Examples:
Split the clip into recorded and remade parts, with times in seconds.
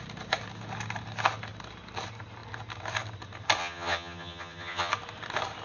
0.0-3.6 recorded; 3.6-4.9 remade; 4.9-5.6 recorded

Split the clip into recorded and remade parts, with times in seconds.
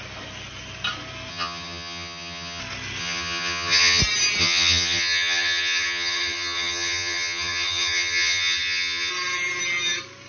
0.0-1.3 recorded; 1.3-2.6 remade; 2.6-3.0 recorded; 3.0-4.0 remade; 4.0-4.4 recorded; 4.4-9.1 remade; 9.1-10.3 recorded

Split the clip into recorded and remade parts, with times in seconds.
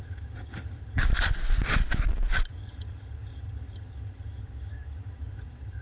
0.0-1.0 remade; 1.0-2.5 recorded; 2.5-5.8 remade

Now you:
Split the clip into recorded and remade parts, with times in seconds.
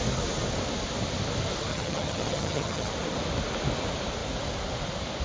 0.0-1.7 recorded; 1.7-2.9 remade; 2.9-5.2 recorded